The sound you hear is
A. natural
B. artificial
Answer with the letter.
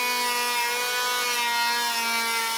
A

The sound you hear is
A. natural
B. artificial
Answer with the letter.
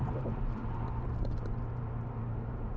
B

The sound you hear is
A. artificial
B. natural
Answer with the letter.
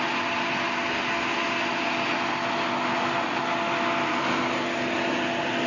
B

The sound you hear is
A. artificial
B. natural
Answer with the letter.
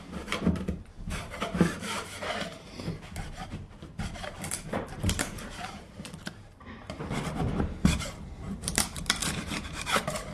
A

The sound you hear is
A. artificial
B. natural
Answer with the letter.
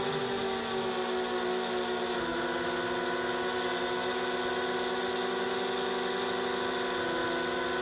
B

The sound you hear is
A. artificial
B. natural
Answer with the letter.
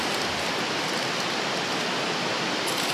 B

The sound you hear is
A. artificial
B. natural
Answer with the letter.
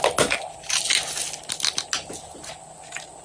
B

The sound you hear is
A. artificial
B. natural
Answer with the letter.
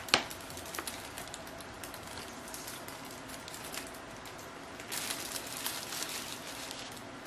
B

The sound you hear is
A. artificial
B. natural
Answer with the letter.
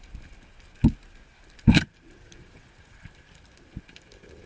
B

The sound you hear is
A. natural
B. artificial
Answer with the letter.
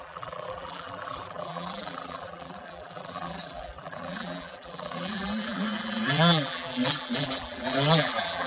B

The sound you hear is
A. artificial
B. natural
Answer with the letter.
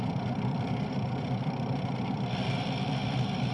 A